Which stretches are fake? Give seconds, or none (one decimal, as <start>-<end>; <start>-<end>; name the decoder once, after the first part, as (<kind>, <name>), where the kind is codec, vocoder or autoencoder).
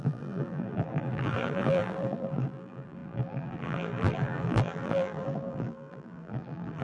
0.0-6.8 (vocoder, BigVGAN v2)